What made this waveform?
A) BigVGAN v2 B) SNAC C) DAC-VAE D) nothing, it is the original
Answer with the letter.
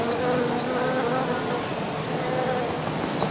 D